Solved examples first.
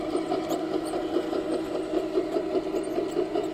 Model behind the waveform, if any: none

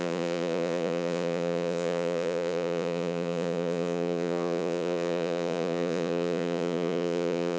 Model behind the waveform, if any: vocoder, Vocos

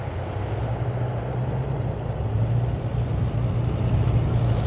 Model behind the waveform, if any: none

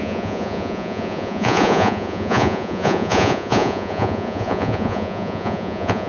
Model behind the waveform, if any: vocoder, Vocos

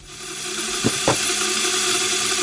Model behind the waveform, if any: none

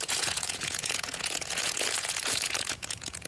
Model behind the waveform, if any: vocoder, Vocos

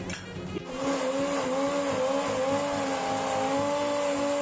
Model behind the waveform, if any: none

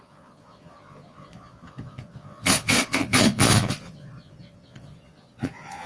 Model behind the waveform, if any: vocoder, Vocos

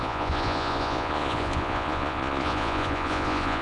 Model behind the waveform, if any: vocoder, Vocos